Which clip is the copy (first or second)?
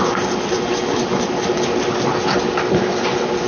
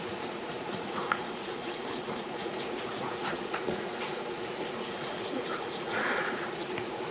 second